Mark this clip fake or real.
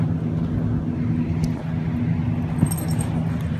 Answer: real